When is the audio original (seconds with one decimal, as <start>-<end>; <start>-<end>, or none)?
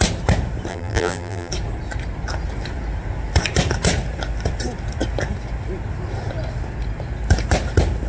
0.0-0.7; 1.5-8.1